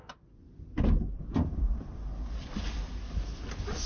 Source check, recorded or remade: recorded